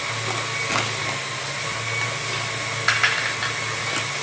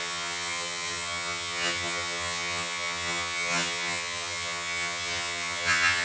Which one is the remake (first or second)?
second